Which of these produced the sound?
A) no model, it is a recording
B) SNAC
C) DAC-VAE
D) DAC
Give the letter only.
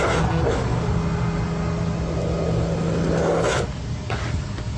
A